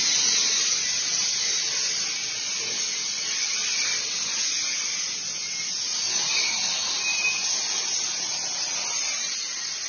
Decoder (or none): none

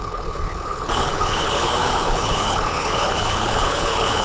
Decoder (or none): codec, HILCodec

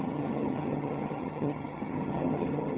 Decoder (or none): vocoder, HiFi-GAN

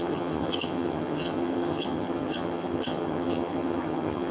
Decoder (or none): vocoder, HiFi-GAN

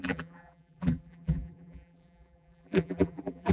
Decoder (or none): vocoder, BigVGAN v2